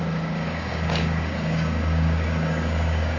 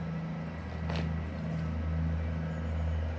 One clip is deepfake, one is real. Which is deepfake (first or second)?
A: first